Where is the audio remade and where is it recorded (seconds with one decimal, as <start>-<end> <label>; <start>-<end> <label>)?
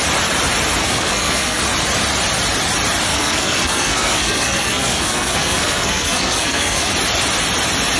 0.0-0.8 recorded; 0.8-1.6 remade; 1.6-3.1 recorded; 3.1-6.9 remade; 6.9-8.0 recorded